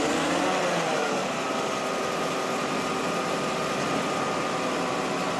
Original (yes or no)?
yes